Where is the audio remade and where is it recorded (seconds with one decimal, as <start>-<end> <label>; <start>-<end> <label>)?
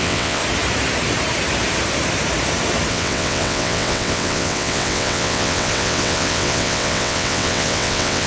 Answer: 0.0-0.4 remade; 0.4-2.9 recorded; 2.9-8.3 remade